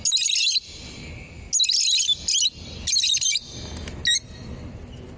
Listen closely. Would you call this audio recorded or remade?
recorded